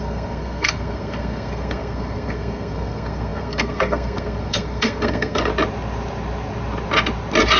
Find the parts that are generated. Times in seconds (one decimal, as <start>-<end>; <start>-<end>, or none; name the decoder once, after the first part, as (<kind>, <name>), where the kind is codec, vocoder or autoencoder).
0.0-5.5 (codec, SNAC)